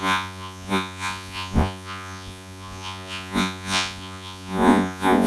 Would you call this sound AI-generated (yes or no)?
yes